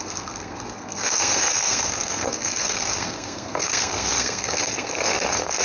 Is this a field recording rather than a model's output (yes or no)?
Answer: no